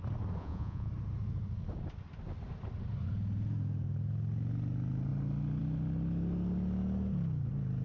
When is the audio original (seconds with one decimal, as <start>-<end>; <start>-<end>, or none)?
0.0-0.4; 0.9-7.8

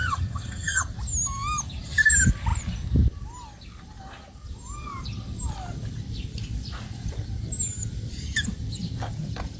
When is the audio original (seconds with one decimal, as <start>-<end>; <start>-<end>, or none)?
0.8-9.6

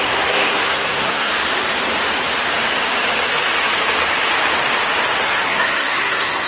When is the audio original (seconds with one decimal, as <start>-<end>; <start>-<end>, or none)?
1.3-5.2